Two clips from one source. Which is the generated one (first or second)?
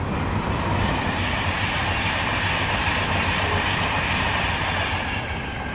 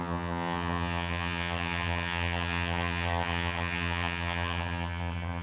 second